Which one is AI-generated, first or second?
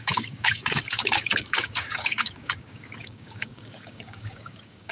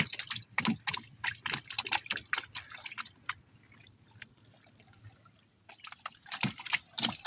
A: first